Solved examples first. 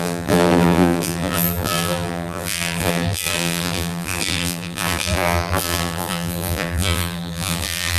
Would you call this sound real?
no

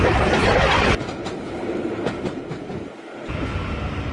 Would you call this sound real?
yes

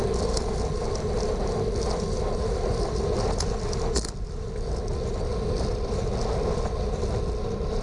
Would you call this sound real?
yes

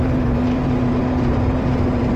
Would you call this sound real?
no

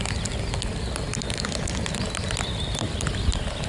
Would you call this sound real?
yes